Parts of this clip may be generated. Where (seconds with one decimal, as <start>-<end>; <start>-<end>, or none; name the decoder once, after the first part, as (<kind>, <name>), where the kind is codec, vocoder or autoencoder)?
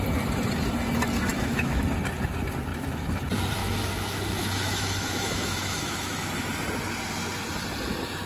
1.3-1.8 (autoencoder, DAC-VAE); 3.6-6.3